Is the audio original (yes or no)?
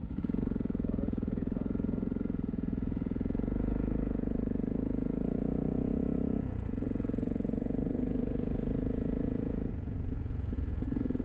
no